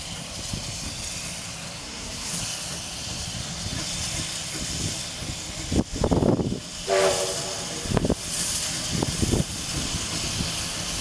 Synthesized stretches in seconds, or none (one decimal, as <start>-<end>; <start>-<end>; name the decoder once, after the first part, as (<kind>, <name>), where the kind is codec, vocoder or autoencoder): 1.8-2.3 (codec, SNAC)